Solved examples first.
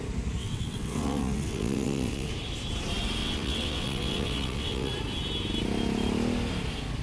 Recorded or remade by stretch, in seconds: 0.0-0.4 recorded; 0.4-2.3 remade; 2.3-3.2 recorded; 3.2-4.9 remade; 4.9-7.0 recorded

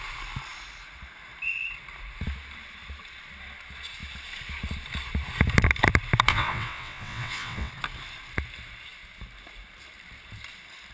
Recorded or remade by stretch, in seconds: 0.0-6.3 recorded; 6.3-7.7 remade; 7.7-10.9 recorded